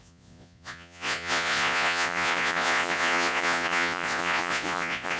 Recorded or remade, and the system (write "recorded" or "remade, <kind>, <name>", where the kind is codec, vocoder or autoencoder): remade, vocoder, Vocos